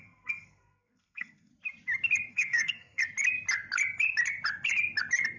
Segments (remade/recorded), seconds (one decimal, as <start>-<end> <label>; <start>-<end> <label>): 0.0-1.5 remade; 1.5-2.3 recorded; 2.3-3.0 remade; 3.0-5.4 recorded